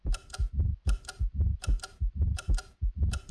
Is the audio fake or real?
fake